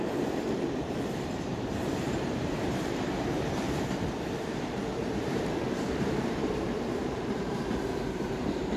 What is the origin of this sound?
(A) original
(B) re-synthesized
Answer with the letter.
B